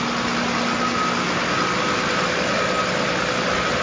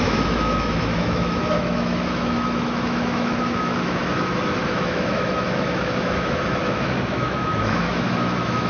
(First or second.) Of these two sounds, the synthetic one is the second